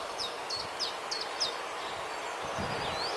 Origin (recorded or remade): recorded